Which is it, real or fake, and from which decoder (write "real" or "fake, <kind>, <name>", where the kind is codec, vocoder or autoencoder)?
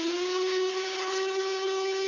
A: fake, codec, HILCodec